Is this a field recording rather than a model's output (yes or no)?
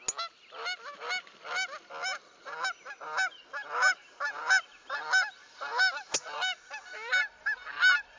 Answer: yes